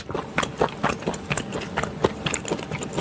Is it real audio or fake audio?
real